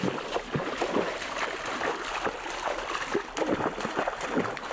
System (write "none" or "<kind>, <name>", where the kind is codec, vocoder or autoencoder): none